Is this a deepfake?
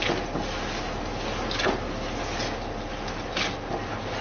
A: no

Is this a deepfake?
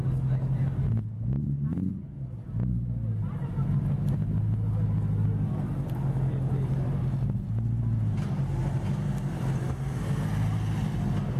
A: no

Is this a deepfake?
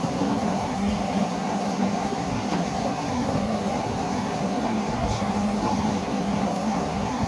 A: yes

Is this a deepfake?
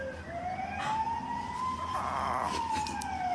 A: no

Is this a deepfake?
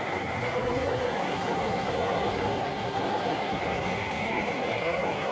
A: yes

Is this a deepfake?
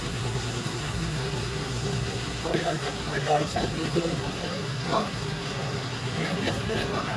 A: yes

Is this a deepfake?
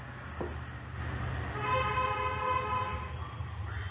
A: no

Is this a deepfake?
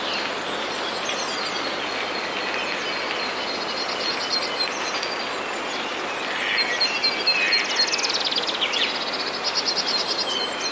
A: no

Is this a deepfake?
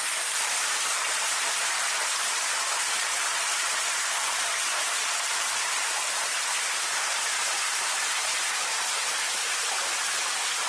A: yes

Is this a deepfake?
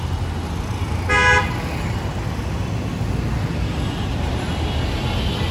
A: no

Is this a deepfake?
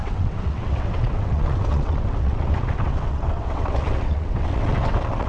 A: yes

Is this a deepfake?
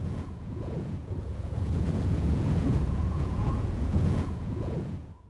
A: yes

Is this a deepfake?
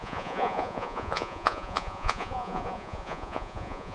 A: yes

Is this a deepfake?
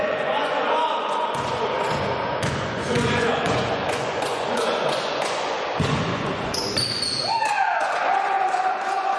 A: yes